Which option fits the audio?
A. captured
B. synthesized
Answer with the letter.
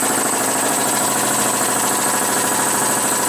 A